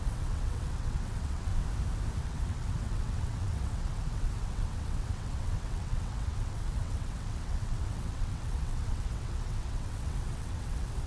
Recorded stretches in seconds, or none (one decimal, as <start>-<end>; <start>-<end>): 1.5-2.2